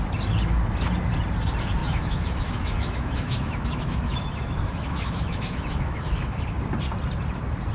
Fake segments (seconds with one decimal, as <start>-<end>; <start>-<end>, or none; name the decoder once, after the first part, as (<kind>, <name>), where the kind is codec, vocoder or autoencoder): 1.8-6.4 (autoencoder, DAC-VAE)